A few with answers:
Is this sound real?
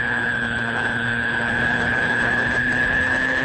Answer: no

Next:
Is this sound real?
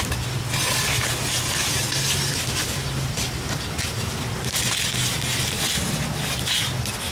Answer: yes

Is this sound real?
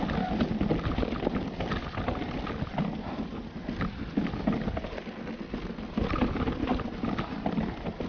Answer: yes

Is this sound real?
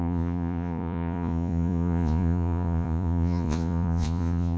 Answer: no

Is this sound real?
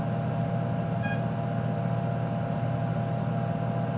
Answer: yes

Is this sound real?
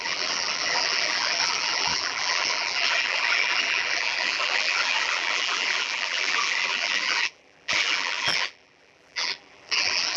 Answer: no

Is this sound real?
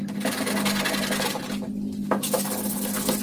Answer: yes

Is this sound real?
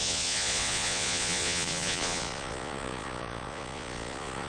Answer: no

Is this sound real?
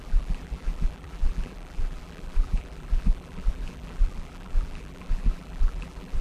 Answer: no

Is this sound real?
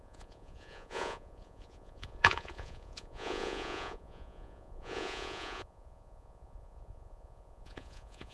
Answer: no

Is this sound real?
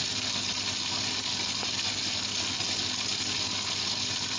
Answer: yes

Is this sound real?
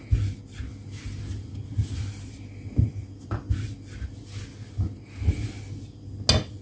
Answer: yes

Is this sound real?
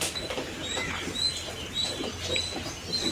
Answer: yes